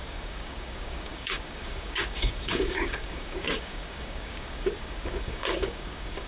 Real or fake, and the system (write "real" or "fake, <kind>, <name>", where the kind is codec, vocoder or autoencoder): fake, codec, DAC